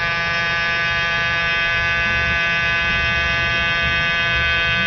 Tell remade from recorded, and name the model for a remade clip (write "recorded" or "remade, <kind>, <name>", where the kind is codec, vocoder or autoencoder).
recorded